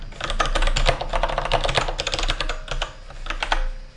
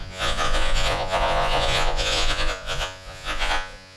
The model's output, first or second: second